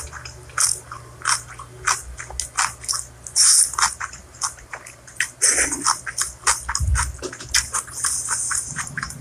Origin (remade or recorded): recorded